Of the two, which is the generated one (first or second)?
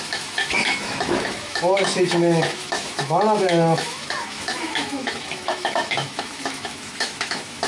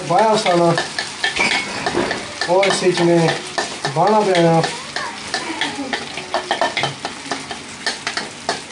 first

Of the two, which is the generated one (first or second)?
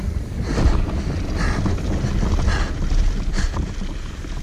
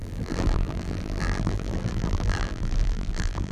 second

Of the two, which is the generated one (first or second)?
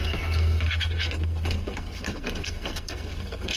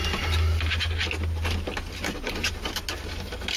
first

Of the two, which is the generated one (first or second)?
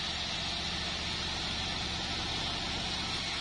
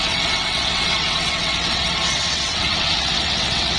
second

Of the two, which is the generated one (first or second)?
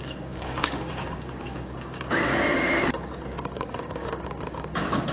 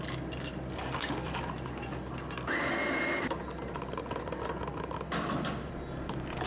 first